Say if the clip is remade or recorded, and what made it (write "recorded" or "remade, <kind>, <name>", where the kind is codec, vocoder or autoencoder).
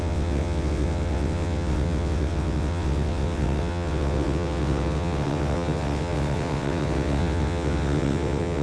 remade, vocoder, WaveNeXt